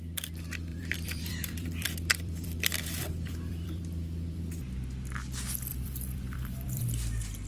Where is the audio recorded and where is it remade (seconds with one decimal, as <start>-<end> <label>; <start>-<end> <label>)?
0.0-0.7 recorded; 0.7-4.4 remade; 4.4-5.7 recorded; 5.7-6.8 remade; 6.8-7.5 recorded